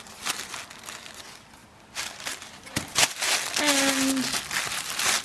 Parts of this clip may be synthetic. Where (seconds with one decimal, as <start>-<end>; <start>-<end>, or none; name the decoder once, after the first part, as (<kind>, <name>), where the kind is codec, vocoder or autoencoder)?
none